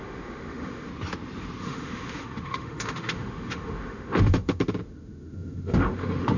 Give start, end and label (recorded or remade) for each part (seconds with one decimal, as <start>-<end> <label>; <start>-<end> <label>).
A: 0.0-0.9 remade; 0.9-1.6 recorded; 1.6-6.4 remade